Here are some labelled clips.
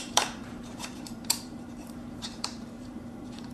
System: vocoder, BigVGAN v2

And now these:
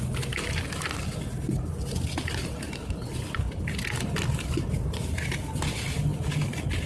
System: none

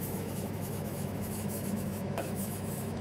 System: autoencoder, DAC-VAE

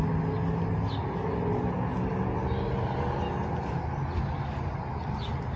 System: none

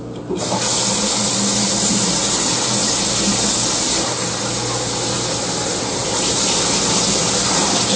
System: none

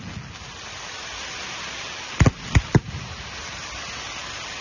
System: none